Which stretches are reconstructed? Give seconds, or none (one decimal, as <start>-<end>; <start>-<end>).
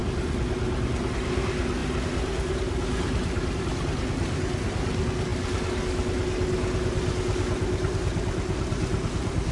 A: none